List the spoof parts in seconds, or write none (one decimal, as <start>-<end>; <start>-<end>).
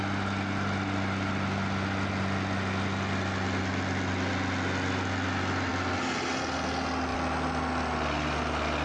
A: none